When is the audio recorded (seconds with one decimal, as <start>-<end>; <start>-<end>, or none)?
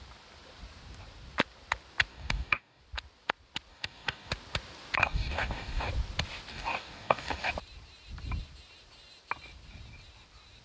0.0-2.1; 2.8-3.7; 4.3-5.0; 5.9-6.5; 7.5-10.6